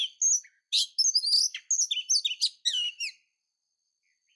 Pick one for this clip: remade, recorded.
recorded